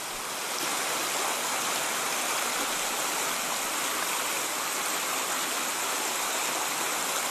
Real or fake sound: real